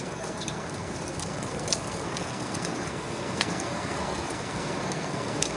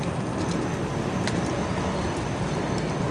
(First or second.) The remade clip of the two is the first